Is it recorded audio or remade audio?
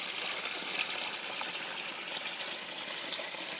recorded